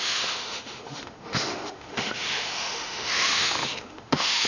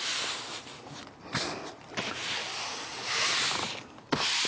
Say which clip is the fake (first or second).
first